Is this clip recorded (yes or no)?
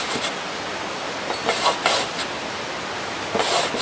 yes